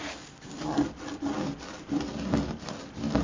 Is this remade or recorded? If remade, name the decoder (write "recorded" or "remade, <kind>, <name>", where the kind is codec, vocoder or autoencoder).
recorded